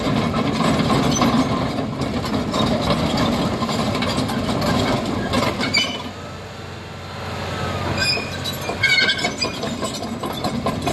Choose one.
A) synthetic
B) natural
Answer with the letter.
B